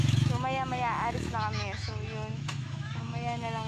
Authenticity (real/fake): fake